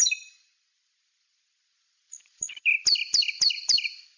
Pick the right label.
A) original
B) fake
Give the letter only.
A